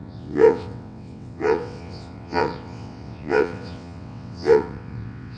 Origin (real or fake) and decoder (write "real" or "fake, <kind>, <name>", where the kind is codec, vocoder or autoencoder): fake, vocoder, WaveNeXt